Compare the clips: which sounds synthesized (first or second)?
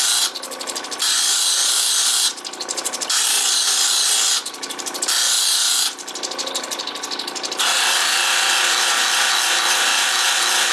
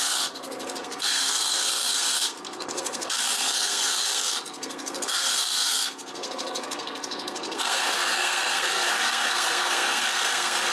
second